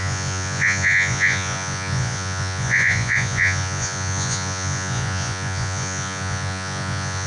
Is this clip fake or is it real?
fake